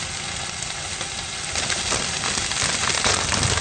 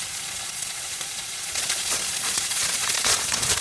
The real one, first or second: first